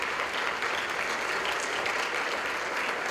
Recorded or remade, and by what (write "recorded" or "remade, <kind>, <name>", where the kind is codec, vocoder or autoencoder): recorded